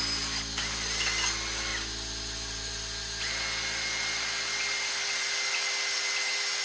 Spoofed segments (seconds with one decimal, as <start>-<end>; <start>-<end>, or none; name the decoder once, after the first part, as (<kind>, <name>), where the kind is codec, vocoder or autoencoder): none